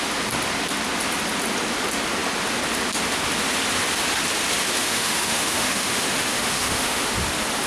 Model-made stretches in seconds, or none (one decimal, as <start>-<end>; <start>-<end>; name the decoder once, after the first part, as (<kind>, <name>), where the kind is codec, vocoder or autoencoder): 4.8-7.1 (autoencoder, DAC-VAE)